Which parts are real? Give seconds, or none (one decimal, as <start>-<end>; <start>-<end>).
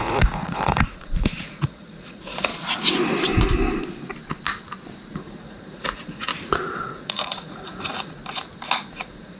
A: 2.5-5.1; 6.3-6.8; 8.2-8.9